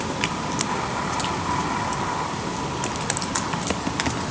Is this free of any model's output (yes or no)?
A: yes